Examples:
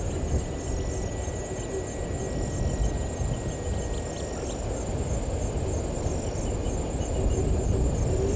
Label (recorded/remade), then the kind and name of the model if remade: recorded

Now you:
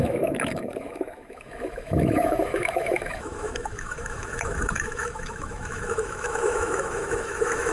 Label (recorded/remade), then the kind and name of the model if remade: remade, autoencoder, DAC-VAE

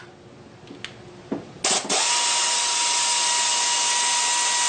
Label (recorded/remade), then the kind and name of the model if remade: recorded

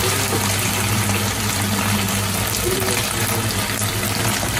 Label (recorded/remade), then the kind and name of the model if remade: recorded